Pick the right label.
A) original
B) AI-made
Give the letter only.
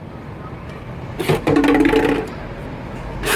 A